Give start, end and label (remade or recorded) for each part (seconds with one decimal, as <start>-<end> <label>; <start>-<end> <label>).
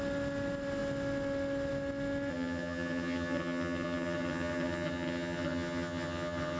0.0-2.3 recorded; 2.3-6.6 remade